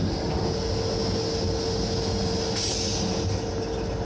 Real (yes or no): yes